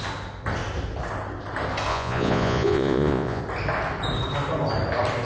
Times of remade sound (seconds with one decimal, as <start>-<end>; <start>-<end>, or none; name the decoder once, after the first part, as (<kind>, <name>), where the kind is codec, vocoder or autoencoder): 1.9-3.4 (vocoder, Vocos)